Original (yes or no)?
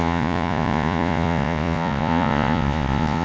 no